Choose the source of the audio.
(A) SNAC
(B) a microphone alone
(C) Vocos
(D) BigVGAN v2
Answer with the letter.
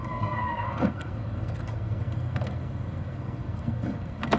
A